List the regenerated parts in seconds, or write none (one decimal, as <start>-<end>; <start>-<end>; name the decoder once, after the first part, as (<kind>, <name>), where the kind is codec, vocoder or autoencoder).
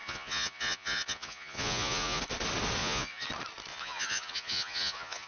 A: 0.0-2.2 (vocoder, Vocos); 2.8-3.3; 3.7-5.3